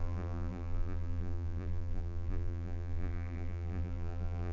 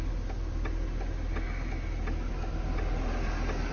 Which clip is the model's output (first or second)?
first